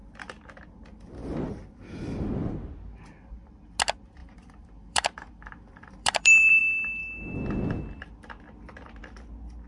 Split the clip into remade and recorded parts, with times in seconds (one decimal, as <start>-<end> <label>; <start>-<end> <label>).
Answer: 0.0-2.7 remade; 2.7-4.2 recorded; 4.2-6.6 remade; 6.6-9.7 recorded